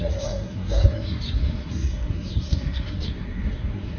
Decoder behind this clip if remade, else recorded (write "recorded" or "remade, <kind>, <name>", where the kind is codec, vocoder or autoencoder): remade, codec, SNAC